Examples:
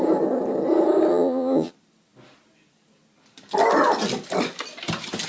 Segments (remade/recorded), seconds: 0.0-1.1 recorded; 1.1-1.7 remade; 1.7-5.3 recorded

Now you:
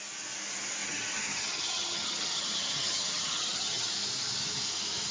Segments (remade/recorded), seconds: 0.0-0.8 recorded; 0.8-3.9 remade; 3.9-5.1 recorded